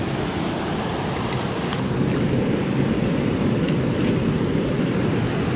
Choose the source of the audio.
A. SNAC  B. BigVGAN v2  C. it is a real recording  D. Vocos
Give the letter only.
C